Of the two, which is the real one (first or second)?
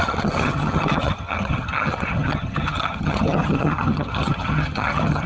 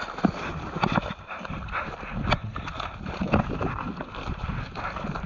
second